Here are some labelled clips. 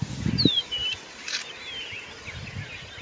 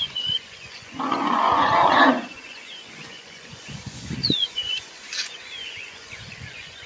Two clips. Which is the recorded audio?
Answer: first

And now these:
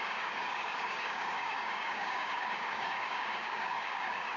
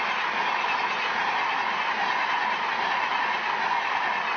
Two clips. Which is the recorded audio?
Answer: second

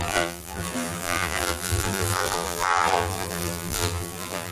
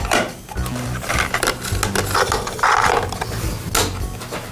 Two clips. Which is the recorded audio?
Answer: second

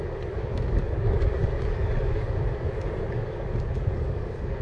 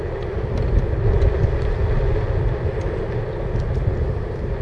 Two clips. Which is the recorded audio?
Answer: second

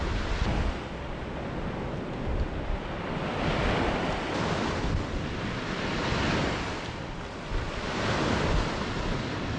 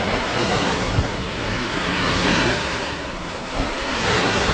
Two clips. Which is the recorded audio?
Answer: first